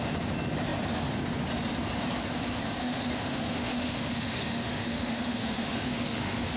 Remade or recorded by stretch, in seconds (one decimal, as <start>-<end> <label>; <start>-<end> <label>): 0.0-2.8 recorded; 2.8-6.6 remade